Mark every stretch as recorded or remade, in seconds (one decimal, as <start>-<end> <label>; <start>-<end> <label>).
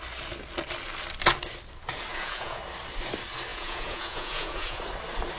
0.0-2.1 recorded; 2.1-2.6 remade; 2.6-3.5 recorded; 3.5-4.8 remade; 4.8-5.4 recorded